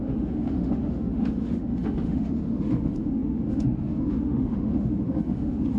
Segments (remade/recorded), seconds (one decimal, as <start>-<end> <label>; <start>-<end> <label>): 0.0-5.8 remade